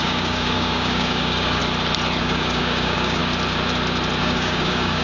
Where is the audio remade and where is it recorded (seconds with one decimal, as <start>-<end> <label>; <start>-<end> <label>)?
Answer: 0.0-1.6 remade; 1.6-2.2 recorded; 2.2-3.2 remade; 3.2-4.2 recorded; 4.2-5.0 remade